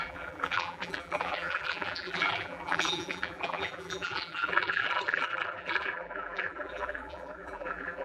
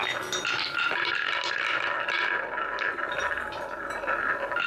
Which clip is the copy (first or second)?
first